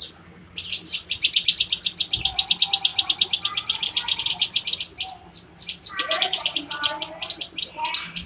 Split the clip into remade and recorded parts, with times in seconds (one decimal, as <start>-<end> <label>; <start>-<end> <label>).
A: 0.0-8.3 recorded